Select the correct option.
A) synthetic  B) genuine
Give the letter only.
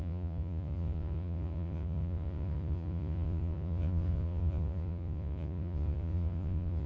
A